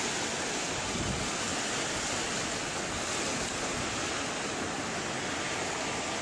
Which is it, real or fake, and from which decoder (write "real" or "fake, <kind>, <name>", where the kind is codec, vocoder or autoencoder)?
real